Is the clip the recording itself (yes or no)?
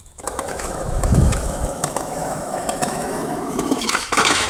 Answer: no